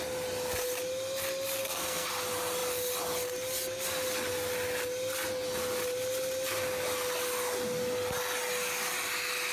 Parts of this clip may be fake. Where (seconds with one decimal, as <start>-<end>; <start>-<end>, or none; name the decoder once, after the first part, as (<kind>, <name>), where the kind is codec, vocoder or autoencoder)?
1.6-2.1 (codec, SNAC)